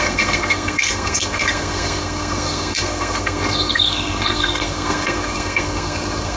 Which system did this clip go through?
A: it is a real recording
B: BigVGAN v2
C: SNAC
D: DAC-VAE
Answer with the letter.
C